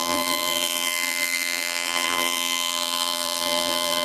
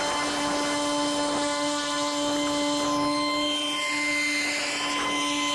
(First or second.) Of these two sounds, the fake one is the first